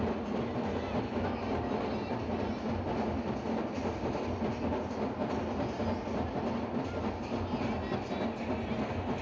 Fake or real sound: real